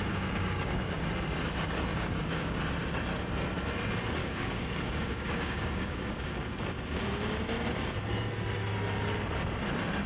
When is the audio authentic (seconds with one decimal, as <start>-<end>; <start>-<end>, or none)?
1.1-1.9; 2.6-4.2; 6.6-10.1